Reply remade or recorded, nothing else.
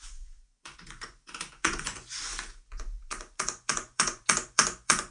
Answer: remade